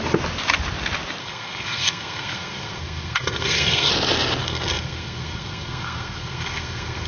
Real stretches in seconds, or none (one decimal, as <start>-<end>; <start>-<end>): 0.0-1.2; 3.9-4.4